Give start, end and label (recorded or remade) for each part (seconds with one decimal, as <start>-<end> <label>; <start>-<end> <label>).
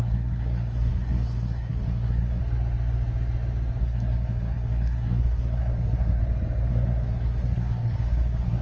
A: 0.0-2.4 remade; 2.4-3.8 recorded; 3.8-6.2 remade; 6.2-6.7 recorded; 6.7-8.6 remade